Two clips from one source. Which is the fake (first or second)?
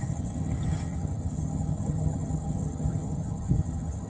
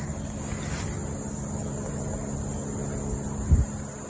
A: first